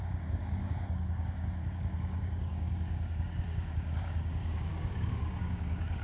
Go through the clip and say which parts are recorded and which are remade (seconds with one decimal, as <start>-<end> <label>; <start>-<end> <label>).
0.0-6.0 remade